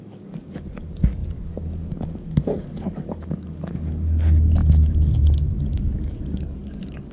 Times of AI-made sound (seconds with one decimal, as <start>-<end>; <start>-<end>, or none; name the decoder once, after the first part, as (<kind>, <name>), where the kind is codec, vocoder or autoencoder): 0.0-7.1 (codec, DAC)